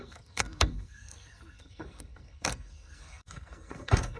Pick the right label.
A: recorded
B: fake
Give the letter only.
B